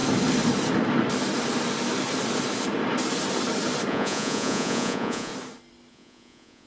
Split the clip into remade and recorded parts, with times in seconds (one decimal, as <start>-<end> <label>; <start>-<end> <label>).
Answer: 0.0-3.9 recorded; 3.9-5.3 remade; 5.3-5.9 recorded; 5.9-6.7 remade